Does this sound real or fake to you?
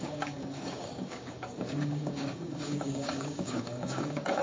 fake